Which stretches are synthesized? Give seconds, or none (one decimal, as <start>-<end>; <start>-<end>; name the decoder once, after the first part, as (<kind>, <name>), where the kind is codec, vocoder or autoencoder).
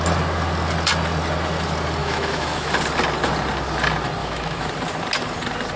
2.0-2.7 (autoencoder, DAC-VAE); 4.2-4.7